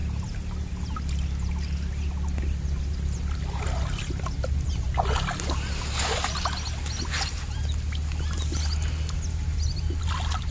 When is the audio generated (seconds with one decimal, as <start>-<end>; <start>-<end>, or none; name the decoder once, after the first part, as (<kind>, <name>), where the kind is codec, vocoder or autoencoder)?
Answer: none